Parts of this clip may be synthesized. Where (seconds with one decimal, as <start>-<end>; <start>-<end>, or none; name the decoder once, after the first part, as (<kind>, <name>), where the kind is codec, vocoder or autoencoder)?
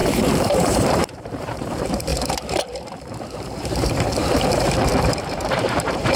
0.0-2.1 (vocoder, BigVGAN v2); 3.3-6.2